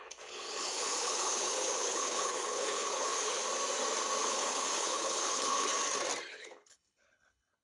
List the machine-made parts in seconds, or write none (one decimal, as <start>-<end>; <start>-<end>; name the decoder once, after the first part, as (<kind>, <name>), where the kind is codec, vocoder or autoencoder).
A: 0.0-3.4 (codec, HILCodec); 4.2-5.7; 6.3-7.6